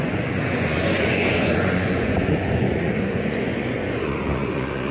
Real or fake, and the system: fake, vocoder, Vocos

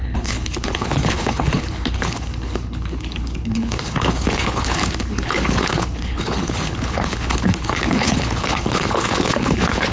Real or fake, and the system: fake, codec, HILCodec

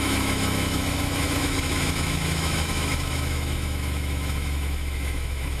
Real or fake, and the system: fake, autoencoder, DAC-VAE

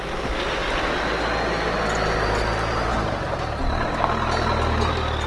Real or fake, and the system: real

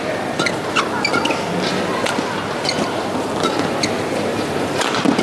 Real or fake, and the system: real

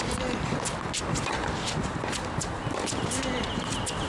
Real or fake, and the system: real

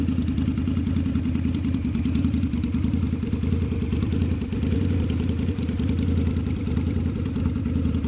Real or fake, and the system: fake, vocoder, BigVGAN v2